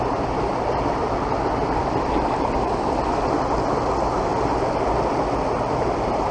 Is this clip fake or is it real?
real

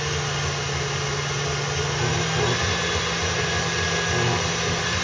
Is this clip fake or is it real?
real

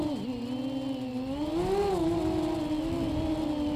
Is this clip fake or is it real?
real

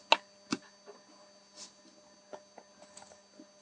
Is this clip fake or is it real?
real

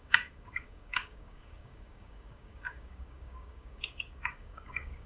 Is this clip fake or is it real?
fake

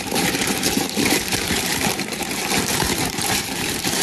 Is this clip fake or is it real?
fake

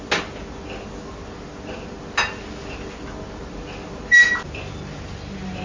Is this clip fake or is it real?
real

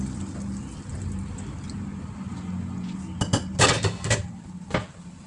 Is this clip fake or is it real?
real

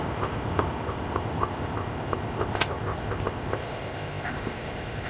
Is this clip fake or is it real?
fake